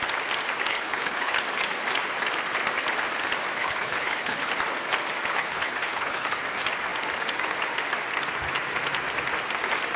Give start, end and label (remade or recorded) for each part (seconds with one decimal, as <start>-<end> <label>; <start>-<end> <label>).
0.0-0.7 recorded; 0.7-1.4 remade; 1.4-3.6 recorded; 3.6-4.5 remade; 4.5-5.3 recorded; 5.3-6.4 remade; 6.4-10.0 recorded